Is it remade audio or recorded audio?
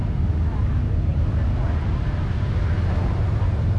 recorded